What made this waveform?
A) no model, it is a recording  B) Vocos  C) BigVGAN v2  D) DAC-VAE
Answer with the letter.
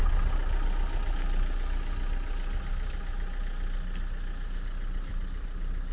A